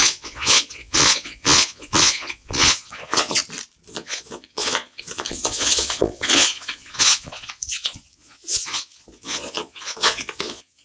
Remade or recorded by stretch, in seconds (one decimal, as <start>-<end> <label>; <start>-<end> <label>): 0.0-3.4 remade; 3.4-3.9 recorded; 3.9-10.8 remade